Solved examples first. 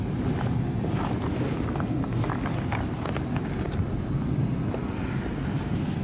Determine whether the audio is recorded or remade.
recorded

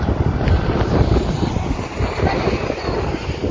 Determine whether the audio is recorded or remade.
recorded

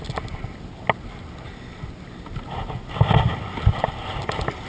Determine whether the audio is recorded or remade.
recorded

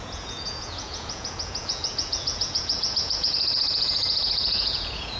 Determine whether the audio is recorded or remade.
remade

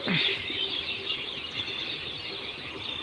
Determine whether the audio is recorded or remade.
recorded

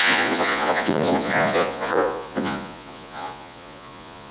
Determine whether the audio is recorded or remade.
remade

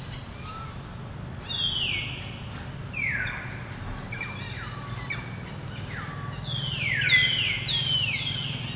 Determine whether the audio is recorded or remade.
recorded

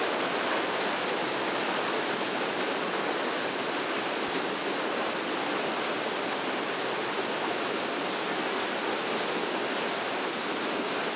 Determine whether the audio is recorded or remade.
recorded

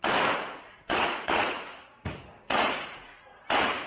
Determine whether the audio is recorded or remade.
remade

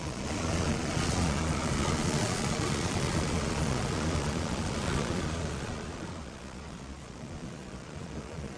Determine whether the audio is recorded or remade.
remade